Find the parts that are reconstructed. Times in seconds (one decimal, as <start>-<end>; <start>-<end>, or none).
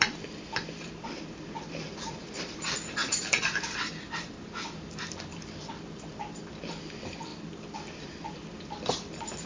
0.0-9.5